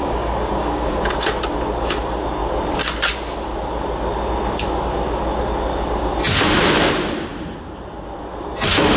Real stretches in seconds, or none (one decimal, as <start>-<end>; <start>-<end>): 1.0-9.0